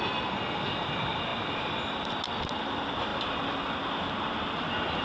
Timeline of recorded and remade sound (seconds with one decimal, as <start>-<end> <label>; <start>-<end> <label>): 0.0-5.0 recorded